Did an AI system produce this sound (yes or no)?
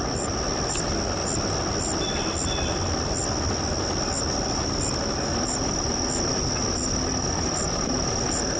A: no